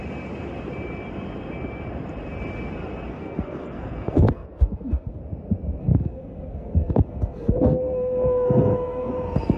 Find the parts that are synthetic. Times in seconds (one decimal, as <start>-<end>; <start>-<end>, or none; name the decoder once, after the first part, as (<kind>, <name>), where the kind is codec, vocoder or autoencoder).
3.1-5.2 (codec, SNAC); 5.8-9.1